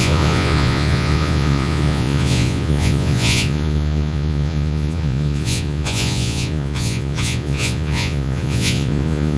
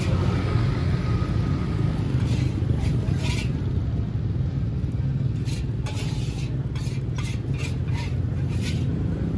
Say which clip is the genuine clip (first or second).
second